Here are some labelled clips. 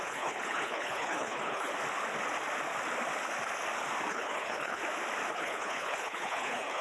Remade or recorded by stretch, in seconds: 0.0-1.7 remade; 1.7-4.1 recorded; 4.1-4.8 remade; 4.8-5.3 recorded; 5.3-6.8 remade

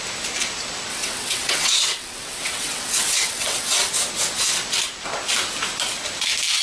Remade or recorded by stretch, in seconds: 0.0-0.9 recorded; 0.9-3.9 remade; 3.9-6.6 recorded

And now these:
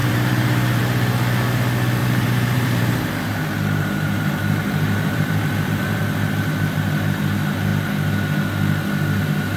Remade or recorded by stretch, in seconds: 0.0-0.8 remade; 0.8-2.0 recorded; 2.0-6.0 remade; 6.0-9.6 recorded

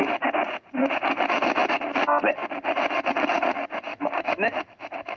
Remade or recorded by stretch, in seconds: 0.0-3.9 recorded; 3.9-5.2 remade

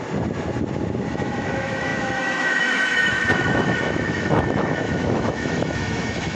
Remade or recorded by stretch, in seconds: 0.0-1.1 recorded; 1.1-6.3 remade

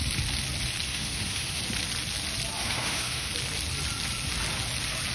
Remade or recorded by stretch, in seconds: 0.0-0.9 recorded; 0.9-1.6 remade; 1.6-2.6 recorded; 2.6-3.3 remade; 3.3-5.1 recorded

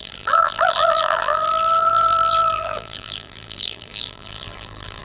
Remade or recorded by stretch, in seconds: 0.0-5.0 remade

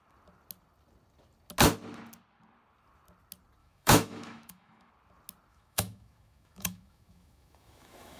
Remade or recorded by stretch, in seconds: 0.0-3.6 recorded; 3.6-4.9 remade; 4.9-5.5 recorded; 5.5-8.2 remade